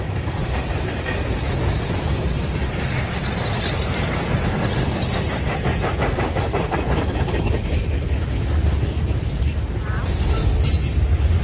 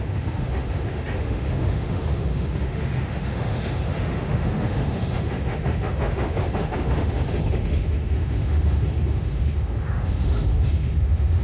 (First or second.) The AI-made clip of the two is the second